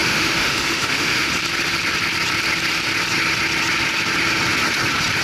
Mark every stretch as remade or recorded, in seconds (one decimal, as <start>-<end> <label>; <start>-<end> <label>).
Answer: 0.0-1.3 remade; 1.3-5.2 recorded